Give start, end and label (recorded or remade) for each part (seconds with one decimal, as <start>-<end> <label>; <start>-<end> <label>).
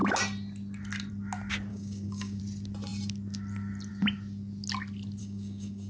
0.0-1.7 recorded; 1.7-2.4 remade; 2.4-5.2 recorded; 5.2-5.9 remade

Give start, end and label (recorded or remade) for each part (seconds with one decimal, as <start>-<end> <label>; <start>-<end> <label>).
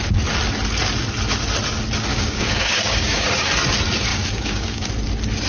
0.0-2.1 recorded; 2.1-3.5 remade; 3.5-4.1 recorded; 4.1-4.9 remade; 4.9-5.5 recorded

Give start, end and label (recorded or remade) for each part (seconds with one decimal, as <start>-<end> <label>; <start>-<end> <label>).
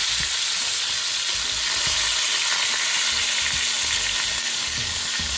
0.0-4.3 recorded; 4.3-5.4 remade